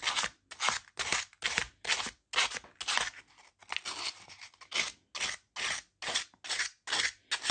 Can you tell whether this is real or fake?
real